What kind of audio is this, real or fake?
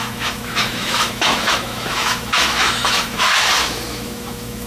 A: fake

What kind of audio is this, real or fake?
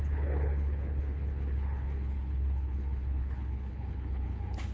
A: fake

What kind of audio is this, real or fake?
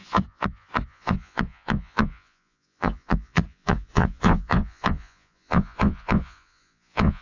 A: fake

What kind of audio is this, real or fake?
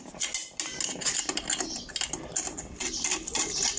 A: real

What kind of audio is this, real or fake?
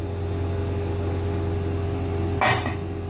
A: real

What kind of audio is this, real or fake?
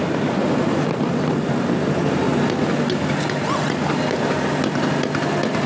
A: real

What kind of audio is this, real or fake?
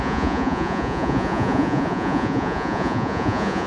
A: fake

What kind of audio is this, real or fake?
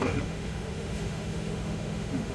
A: fake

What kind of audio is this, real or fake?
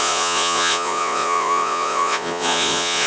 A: fake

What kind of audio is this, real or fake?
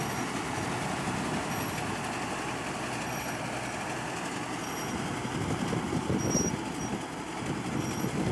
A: real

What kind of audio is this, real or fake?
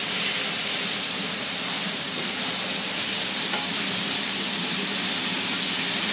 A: real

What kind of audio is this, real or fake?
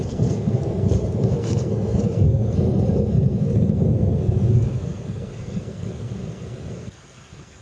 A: fake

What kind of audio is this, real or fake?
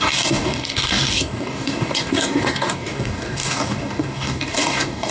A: fake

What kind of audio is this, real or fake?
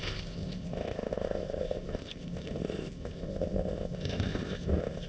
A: fake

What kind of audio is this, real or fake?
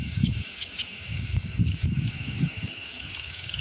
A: fake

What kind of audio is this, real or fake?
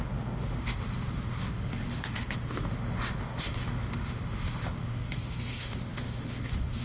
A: fake